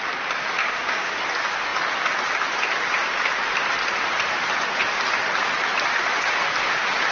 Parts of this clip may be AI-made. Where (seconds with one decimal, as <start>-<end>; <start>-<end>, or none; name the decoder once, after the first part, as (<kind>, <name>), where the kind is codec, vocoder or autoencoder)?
0.6-1.2 (codec, DAC)